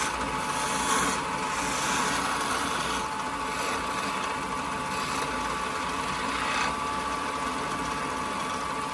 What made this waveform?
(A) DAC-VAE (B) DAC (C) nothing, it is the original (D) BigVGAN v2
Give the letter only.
C